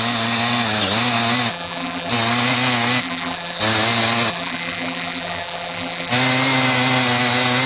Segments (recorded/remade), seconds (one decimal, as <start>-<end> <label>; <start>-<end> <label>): 0.0-1.5 recorded; 1.5-2.1 remade; 2.1-3.0 recorded; 3.0-3.6 remade; 3.6-4.3 recorded; 4.3-6.1 remade; 6.1-7.7 recorded

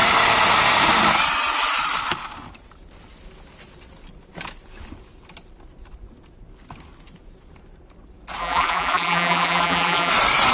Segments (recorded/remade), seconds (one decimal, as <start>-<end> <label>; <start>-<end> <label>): 0.0-8.4 recorded; 8.4-10.1 remade; 10.1-10.5 recorded

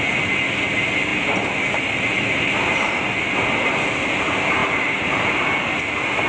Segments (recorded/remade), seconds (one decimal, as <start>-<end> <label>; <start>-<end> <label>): 0.0-1.1 recorded; 1.1-3.0 remade; 3.0-6.3 recorded

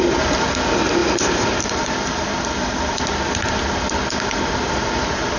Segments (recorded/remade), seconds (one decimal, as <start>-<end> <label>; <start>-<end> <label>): 0.0-1.0 recorded; 1.0-3.0 remade; 3.0-5.4 recorded

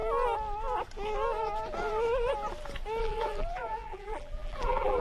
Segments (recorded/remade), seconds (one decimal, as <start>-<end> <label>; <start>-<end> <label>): 0.0-3.0 recorded; 3.0-5.0 remade

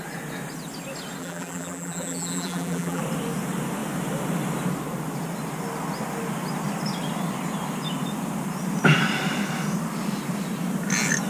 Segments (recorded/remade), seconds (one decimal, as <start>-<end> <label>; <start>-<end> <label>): 0.0-1.2 recorded; 1.2-3.0 remade; 3.0-11.3 recorded

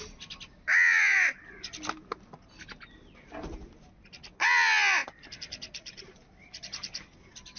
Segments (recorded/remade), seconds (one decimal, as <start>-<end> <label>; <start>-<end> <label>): 0.0-0.7 recorded; 0.7-1.6 remade; 1.6-5.0 recorded; 5.0-7.6 remade

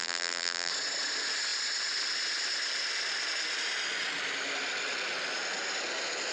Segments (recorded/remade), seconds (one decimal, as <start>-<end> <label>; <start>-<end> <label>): 0.0-0.7 remade; 0.7-6.3 recorded